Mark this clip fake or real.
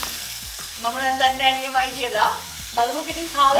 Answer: fake